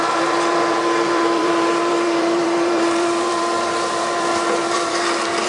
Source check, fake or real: fake